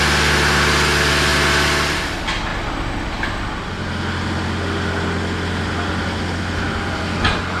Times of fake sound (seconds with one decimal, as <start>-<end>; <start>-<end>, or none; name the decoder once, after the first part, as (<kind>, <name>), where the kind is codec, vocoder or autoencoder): none